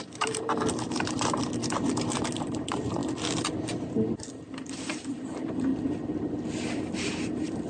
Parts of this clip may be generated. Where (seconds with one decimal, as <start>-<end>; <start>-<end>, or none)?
0.0-1.6; 2.3-3.0; 4.3-5.7; 6.7-7.7